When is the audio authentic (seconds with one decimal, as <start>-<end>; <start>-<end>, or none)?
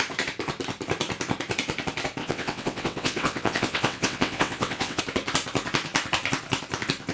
0.0-2.2; 5.0-7.1